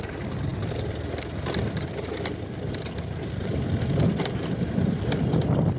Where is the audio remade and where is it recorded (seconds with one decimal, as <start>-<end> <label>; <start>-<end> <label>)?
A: 0.0-5.8 recorded